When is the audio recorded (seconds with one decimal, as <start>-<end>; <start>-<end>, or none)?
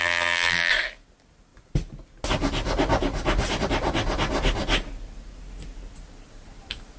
0.7-7.0